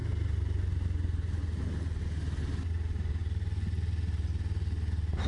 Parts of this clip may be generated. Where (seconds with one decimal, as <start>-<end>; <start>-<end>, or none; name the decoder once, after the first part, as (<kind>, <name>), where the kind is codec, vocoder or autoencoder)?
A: none